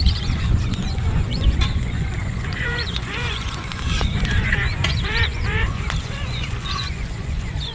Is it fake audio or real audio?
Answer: fake